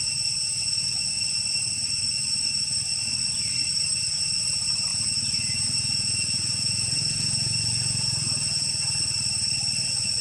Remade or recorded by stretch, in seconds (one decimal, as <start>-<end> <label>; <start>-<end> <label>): 0.0-0.4 recorded; 0.4-1.2 remade; 1.2-4.9 recorded; 4.9-8.7 remade; 8.7-10.2 recorded

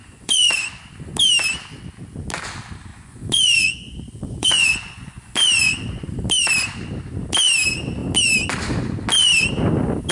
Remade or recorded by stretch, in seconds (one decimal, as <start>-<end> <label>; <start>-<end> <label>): 0.0-0.7 remade; 0.7-2.9 recorded; 2.9-6.1 remade; 6.1-10.1 recorded

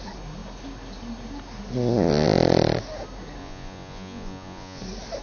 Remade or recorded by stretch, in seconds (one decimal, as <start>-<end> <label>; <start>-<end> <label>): 0.0-3.4 recorded; 3.4-4.8 remade; 4.8-5.2 recorded

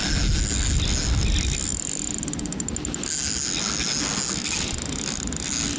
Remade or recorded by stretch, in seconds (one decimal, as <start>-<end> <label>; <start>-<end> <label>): 0.0-5.8 recorded

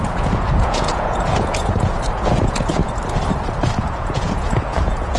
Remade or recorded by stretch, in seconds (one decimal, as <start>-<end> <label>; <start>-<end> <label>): 0.0-2.8 remade; 2.8-3.8 recorded; 3.8-5.2 remade

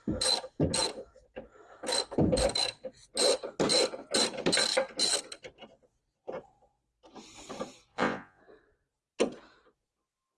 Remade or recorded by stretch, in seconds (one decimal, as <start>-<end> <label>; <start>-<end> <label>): 0.0-7.9 recorded; 7.9-8.4 remade; 8.4-10.4 recorded

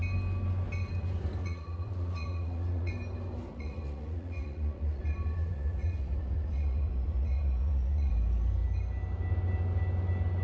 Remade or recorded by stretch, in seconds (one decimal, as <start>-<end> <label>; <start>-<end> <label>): 0.0-1.4 recorded; 1.4-2.9 remade; 2.9-3.5 recorded; 3.5-5.0 remade; 5.0-5.4 recorded; 5.4-8.1 remade; 8.1-10.4 recorded

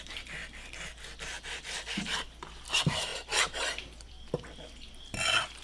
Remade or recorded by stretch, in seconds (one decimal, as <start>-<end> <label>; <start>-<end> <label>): 0.0-5.6 recorded